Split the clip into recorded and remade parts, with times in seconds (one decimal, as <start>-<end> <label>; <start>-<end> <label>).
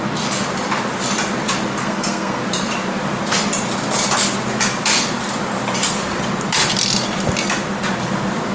0.0-1.8 recorded; 1.8-2.4 remade; 2.4-8.5 recorded